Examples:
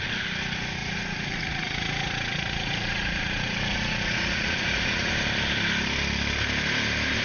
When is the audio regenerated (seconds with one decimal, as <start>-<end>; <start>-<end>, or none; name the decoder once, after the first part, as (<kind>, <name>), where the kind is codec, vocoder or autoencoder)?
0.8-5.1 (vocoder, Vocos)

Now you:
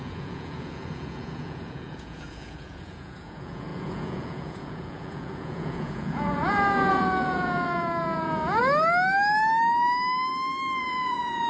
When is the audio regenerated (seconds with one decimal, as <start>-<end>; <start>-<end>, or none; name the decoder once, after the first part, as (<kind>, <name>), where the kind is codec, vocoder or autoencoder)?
0.0-8.6 (vocoder, Vocos); 10.8-11.5

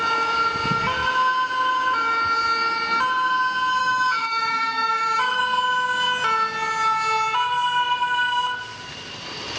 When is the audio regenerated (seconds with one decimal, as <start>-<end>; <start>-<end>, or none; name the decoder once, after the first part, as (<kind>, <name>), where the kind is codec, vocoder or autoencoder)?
3.8-5.4 (autoencoder, DAC-VAE)